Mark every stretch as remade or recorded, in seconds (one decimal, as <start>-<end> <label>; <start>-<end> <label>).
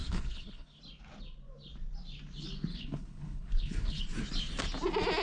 0.0-0.8 remade; 0.8-2.7 recorded; 2.7-4.0 remade; 4.0-5.2 recorded